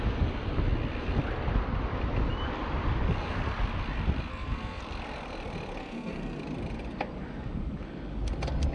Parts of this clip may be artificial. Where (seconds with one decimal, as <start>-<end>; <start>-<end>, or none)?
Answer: 4.3-4.8; 5.8-6.4